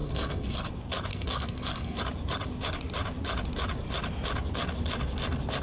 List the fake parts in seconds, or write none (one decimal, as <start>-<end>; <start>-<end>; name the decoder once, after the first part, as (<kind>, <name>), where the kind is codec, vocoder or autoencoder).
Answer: 0.0-0.7 (codec, SNAC); 1.1-2.0